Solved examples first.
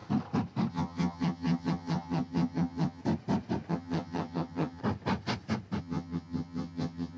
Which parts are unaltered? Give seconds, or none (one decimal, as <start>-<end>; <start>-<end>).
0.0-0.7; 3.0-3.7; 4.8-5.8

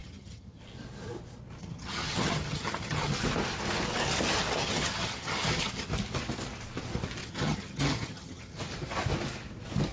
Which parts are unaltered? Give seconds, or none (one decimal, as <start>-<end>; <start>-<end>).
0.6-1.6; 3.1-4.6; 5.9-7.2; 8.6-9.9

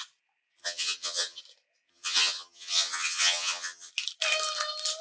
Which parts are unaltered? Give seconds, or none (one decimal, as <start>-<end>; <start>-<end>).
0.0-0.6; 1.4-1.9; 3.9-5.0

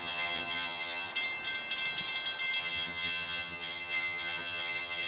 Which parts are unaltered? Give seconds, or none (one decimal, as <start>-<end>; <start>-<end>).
1.1-2.6